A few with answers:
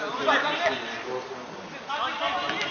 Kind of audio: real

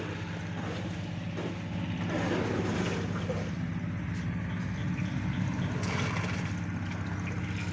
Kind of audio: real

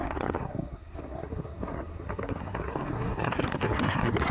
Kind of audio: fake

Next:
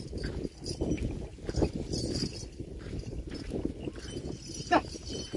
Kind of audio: real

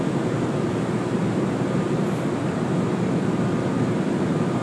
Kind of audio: real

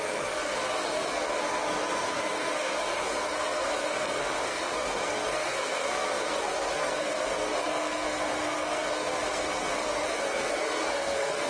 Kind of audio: fake